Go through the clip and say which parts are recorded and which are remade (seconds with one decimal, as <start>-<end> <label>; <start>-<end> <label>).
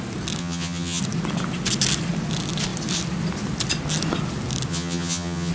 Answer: 0.0-0.4 recorded; 0.4-1.0 remade; 1.0-4.7 recorded; 4.7-5.5 remade